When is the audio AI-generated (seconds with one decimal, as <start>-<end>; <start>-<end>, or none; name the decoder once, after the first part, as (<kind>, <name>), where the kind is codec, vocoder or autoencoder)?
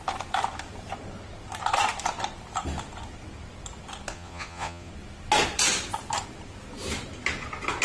4.1-4.9 (vocoder, Vocos)